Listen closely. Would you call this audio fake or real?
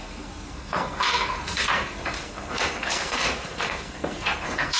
fake